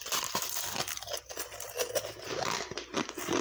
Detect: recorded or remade remade